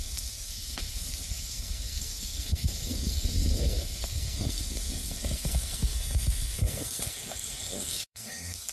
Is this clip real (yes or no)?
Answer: no